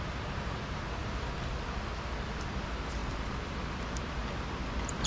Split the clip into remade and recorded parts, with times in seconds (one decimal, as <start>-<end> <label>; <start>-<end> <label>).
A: 0.0-5.1 recorded